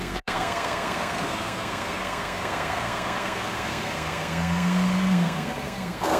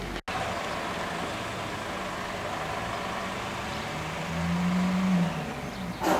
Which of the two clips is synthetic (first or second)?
first